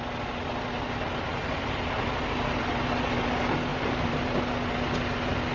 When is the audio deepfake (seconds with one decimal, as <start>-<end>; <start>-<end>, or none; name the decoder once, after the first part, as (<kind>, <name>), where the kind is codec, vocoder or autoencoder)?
1.3-2.1 (vocoder, BigVGAN v2); 3.7-4.4